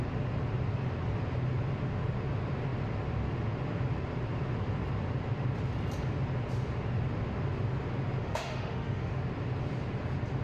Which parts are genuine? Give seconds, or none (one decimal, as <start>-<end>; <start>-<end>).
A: 0.0-8.2; 9.2-10.4